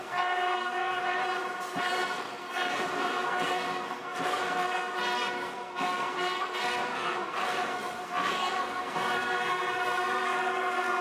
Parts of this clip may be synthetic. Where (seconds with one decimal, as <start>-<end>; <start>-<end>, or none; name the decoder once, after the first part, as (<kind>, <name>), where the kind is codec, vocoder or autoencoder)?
0.0-1.2 (codec, SNAC); 1.8-11.0

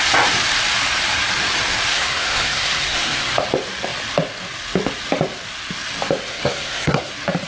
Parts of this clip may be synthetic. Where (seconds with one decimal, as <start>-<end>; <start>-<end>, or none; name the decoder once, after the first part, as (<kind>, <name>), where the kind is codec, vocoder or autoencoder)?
1.9-3.3 (codec, SNAC); 6.3-7.1

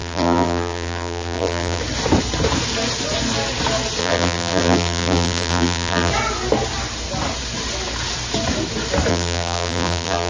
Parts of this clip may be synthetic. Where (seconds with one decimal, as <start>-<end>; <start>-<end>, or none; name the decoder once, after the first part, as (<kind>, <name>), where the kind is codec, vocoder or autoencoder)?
0.0-1.8 (vocoder, BigVGAN v2); 4.0-6.1; 9.1-10.3

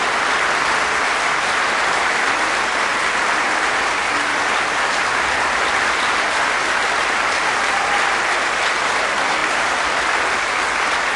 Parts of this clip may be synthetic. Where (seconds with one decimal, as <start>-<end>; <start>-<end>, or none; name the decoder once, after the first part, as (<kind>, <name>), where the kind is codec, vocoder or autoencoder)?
none